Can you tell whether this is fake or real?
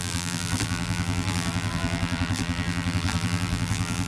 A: fake